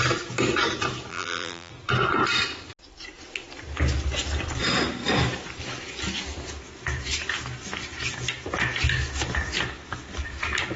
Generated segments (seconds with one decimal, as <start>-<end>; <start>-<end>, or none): 1.1-1.7